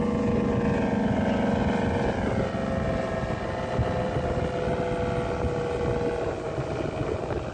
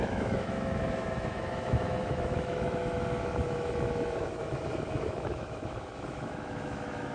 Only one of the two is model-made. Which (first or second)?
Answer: second